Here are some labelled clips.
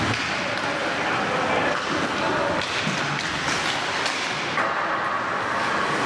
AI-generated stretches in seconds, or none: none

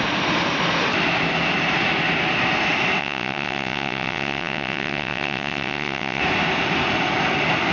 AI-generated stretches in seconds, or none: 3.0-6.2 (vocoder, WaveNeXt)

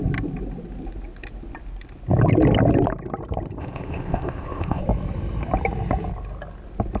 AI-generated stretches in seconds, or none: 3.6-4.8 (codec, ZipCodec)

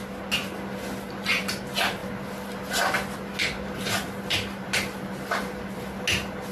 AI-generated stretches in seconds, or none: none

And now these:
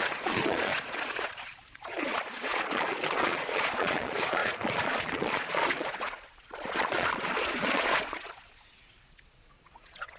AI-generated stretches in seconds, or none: 0.0-10.2 (vocoder, Vocos)

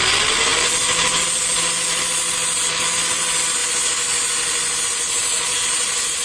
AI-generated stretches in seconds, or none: 5.2-6.2 (vocoder, BigVGAN v2)